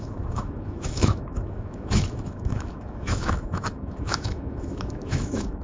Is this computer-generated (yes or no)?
yes